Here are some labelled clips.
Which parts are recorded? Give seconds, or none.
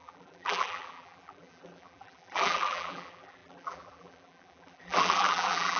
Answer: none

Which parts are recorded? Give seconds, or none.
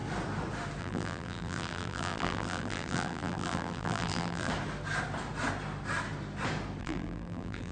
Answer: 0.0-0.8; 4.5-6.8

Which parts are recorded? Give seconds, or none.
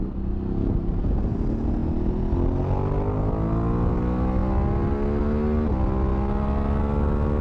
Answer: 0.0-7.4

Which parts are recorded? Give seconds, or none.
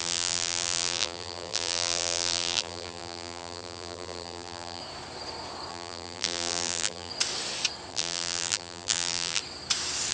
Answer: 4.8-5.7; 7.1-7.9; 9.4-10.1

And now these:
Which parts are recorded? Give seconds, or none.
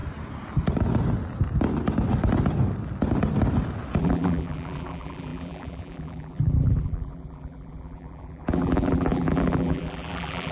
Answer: 0.0-4.0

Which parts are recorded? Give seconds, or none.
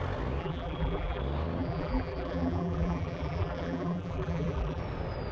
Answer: 0.0-0.4; 1.2-1.6; 4.8-5.3